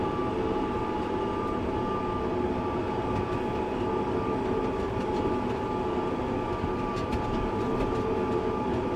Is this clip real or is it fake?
real